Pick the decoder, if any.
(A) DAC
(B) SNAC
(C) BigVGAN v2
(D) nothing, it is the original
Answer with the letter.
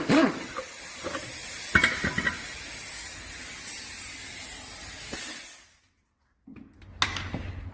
D